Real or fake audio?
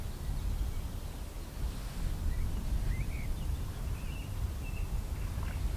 real